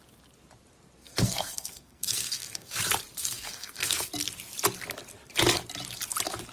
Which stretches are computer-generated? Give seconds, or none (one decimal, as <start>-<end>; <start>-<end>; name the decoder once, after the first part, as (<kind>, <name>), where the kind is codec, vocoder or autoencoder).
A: 1.0-2.8 (codec, SNAC); 3.2-4.1